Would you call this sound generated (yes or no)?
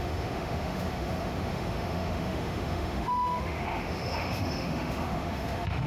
yes